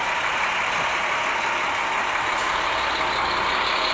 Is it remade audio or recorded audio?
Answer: recorded